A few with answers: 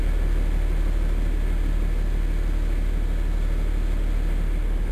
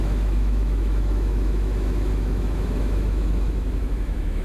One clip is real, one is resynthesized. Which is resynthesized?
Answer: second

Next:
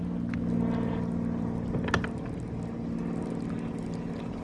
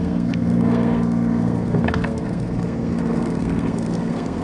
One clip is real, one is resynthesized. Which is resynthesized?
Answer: second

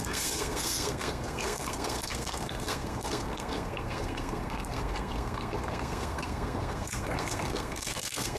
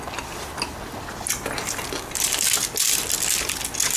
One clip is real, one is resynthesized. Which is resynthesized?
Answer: first